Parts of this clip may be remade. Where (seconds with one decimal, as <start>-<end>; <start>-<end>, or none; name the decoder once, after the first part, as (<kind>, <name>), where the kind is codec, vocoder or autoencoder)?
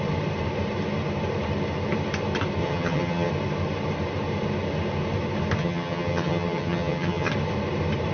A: 2.6-3.3 (vocoder, HiFi-GAN); 5.6-7.3